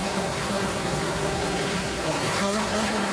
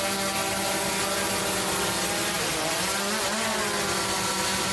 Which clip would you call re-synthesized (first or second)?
first